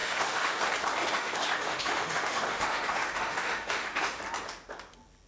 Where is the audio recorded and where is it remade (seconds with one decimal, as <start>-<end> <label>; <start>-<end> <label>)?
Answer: 0.0-0.6 remade; 0.6-1.0 recorded; 1.0-4.2 remade; 4.2-5.3 recorded